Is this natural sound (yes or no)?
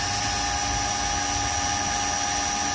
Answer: yes